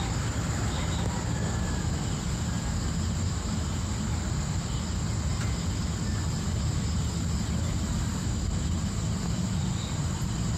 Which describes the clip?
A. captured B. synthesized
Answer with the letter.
A